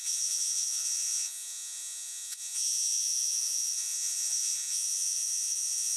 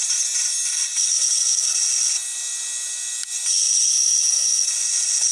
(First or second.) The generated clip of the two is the first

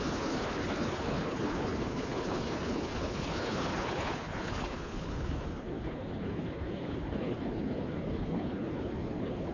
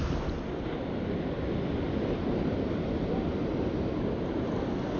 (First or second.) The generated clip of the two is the first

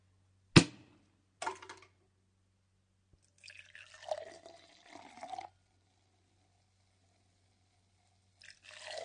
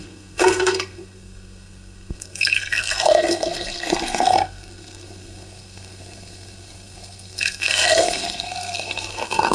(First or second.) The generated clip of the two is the second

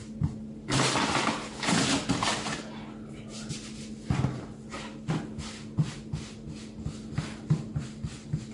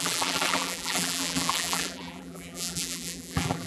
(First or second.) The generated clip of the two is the second